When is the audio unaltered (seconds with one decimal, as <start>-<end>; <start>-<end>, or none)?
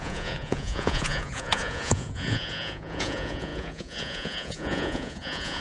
none